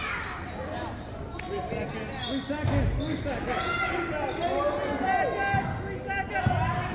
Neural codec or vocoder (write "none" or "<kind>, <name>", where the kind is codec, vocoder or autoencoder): none